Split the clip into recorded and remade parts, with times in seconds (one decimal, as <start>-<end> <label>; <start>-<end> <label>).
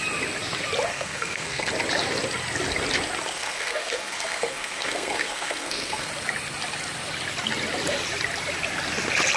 0.0-0.9 recorded; 0.9-1.7 remade; 1.7-3.3 recorded; 3.3-6.1 remade; 6.1-9.4 recorded